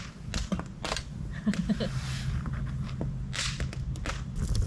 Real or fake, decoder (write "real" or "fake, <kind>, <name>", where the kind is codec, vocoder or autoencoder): real